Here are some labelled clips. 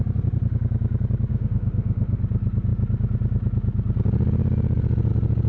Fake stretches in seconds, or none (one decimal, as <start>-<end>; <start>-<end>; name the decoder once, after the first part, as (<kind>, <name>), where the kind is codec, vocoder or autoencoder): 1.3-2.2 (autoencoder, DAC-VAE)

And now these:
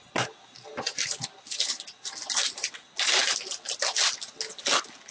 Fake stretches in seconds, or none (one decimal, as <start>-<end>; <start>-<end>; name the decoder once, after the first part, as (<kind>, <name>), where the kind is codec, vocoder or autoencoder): 0.7-2.1 (vocoder, BigVGAN v2)

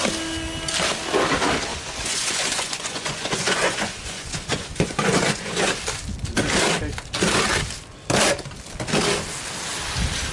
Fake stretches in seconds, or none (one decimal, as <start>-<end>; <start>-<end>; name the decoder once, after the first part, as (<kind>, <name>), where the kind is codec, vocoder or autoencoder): 1.7-5.7 (vocoder, Vocos)

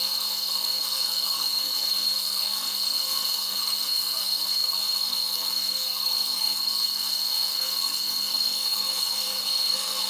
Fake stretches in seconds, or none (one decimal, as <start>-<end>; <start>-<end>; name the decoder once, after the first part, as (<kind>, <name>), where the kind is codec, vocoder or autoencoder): 0.0-10.1 (codec, SNAC)

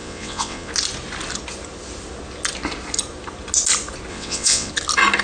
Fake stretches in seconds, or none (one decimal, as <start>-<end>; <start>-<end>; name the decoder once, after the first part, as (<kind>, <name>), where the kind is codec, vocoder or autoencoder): 0.0-0.7 (vocoder, WaveNeXt); 4.1-4.7

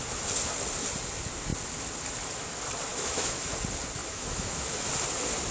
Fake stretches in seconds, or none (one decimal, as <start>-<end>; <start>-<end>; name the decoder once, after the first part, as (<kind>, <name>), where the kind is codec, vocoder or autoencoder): 2.9-3.5 (autoencoder, DAC-VAE); 4.0-4.9

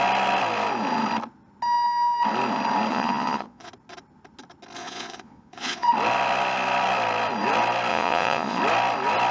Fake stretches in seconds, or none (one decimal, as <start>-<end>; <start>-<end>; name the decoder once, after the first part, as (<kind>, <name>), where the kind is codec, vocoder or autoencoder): 2.9-3.7 (vocoder, Vocos); 4.8-5.9; 7.9-8.6

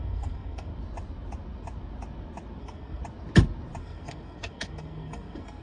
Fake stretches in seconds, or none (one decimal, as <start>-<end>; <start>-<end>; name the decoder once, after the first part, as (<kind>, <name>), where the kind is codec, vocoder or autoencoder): 0.0-0.7 (codec, SNAC); 2.6-3.0; 3.8-5.6